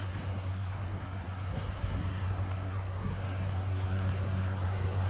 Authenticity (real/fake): fake